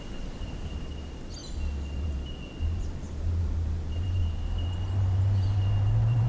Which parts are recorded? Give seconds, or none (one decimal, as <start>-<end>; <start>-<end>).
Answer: 0.0-6.3